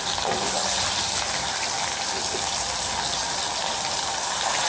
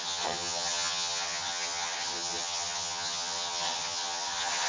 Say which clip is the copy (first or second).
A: second